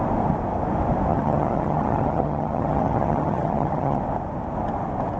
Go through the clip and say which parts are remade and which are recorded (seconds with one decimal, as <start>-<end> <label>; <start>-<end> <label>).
0.0-1.1 recorded; 1.1-4.0 remade; 4.0-5.2 recorded